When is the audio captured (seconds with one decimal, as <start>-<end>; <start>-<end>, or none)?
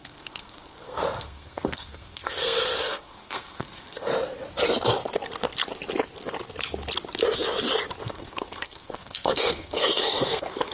4.1-8.0